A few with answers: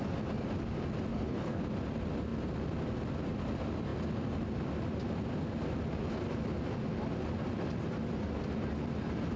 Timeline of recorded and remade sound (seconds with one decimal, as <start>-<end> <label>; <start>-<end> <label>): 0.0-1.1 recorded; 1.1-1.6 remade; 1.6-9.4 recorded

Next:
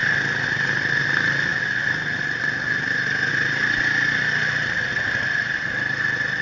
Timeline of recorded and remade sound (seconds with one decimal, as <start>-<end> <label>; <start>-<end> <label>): 0.0-6.4 recorded

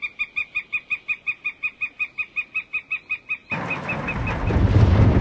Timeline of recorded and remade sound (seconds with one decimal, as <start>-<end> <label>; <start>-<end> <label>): 0.0-5.2 recorded

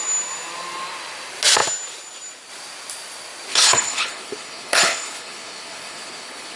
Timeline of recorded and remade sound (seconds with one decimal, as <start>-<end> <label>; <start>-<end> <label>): 0.0-3.5 recorded; 3.5-6.6 remade

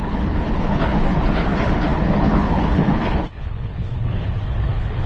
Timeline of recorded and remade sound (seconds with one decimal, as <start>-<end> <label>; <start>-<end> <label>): 0.0-5.1 remade

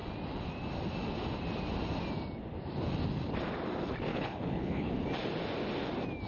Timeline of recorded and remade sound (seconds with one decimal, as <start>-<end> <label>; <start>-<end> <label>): 0.0-4.1 recorded; 4.1-4.9 remade; 4.9-6.3 recorded